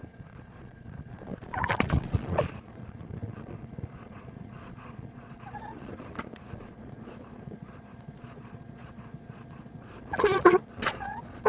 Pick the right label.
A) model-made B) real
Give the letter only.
A